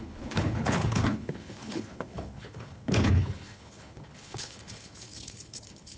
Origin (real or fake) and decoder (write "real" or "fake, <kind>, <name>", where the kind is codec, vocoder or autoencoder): fake, codec, HILCodec